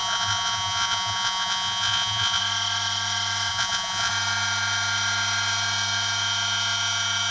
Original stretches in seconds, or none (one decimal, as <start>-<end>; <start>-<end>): 2.4-3.5; 4.1-7.3